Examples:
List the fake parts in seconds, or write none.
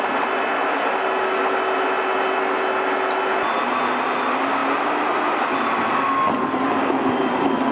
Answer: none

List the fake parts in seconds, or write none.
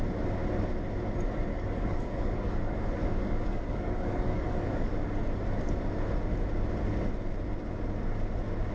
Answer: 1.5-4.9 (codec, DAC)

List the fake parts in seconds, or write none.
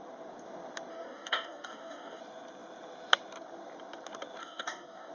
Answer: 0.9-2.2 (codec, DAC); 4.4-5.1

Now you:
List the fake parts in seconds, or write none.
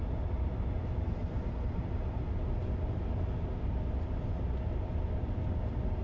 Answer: none